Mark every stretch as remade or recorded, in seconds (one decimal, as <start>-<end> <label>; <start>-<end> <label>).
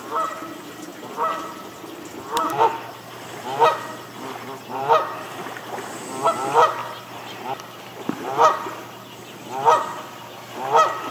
0.0-11.1 recorded